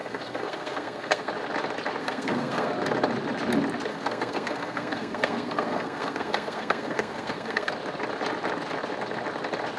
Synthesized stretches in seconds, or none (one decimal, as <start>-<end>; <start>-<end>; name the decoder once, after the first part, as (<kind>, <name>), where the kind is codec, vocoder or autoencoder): 0.0-1.3 (codec, SNAC); 2.0-2.7; 3.9-7.7